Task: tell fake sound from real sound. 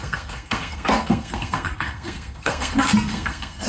fake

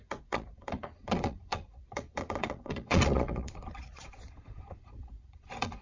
fake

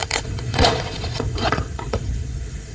fake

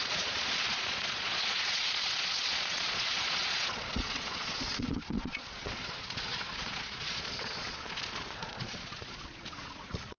fake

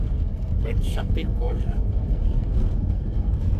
fake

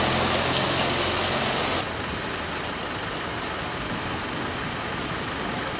real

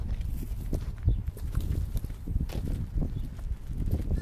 real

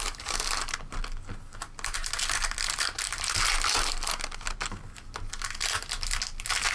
real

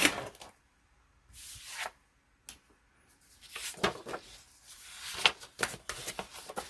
real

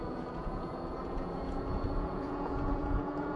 fake